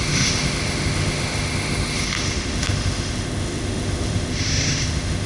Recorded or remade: remade